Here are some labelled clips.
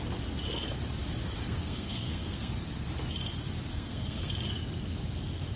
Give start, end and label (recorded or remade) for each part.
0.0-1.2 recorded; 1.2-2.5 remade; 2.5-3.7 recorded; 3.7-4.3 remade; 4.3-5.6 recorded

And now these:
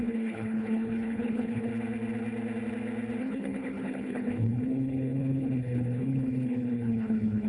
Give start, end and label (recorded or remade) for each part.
0.0-1.7 remade; 1.7-3.2 recorded; 3.2-7.5 remade

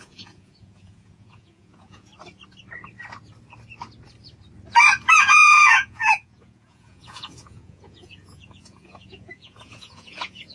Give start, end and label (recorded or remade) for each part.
0.0-2.1 remade; 2.1-5.1 recorded; 5.1-10.5 remade

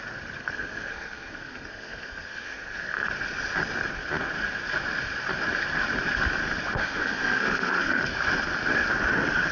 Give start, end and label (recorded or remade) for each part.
0.0-0.4 recorded; 0.4-3.1 remade; 3.1-6.8 recorded; 6.8-8.0 remade; 8.0-9.5 recorded

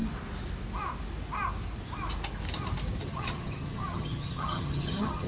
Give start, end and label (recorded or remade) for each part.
0.0-3.0 recorded; 3.0-5.3 remade

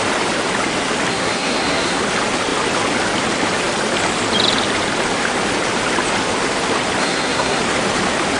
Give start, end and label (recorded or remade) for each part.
0.0-1.1 recorded; 1.1-2.0 remade; 2.0-7.0 recorded; 7.0-7.6 remade; 7.6-8.4 recorded